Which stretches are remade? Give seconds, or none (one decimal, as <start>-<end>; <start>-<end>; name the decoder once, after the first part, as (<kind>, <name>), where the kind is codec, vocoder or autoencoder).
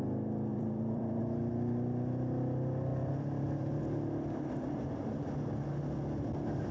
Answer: 0.5-1.2 (vocoder, BigVGAN v2); 2.9-3.8